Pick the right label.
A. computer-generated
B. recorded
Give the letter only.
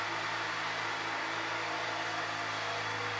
B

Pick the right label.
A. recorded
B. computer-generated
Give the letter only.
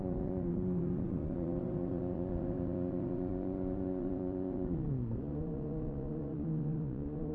B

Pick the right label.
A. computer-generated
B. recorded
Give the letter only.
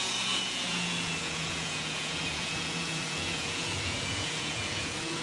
A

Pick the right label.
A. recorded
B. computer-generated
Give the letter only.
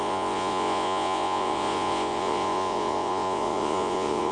B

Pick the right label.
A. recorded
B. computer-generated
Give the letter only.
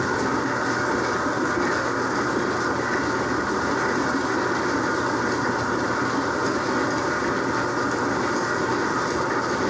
A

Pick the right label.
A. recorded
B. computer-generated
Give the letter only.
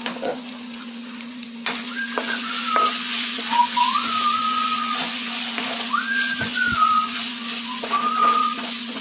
B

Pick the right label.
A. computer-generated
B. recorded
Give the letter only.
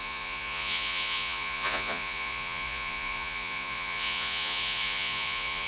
A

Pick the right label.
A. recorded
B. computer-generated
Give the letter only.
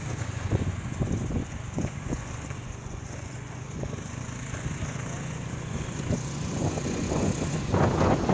B